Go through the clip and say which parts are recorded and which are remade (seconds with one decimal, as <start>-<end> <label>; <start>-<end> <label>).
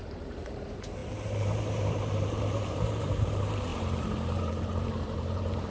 0.0-5.7 remade